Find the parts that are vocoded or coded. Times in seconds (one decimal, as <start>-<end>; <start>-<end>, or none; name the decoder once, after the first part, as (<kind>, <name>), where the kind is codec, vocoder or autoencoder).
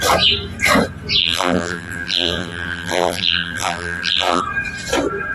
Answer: 1.2-4.4 (vocoder, BigVGAN v2)